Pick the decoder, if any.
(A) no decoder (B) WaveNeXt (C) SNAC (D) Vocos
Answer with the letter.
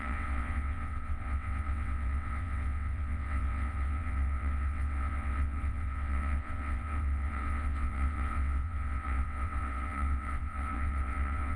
B